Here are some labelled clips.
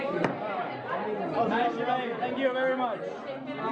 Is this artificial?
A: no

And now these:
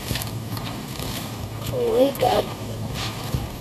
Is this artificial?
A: yes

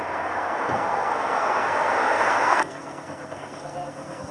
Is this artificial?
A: yes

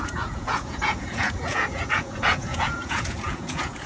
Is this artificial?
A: yes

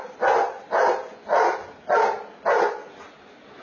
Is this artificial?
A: no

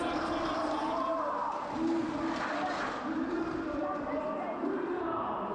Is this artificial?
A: no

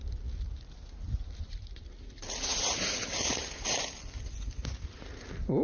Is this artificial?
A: no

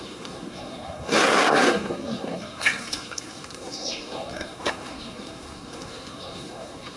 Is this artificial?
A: yes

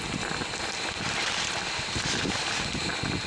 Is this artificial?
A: no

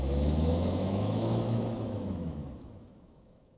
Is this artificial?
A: yes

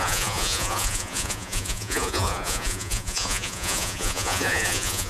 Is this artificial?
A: yes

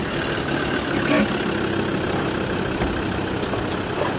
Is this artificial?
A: no